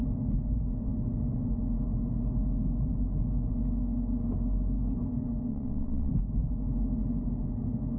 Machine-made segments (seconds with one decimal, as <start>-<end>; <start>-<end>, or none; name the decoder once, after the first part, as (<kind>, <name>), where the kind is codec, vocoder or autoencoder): 5.5-6.1 (vocoder, WaveNeXt)